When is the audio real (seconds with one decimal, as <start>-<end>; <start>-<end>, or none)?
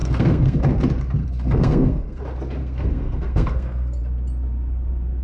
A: 0.6-1.2; 2.2-2.6; 4.0-5.2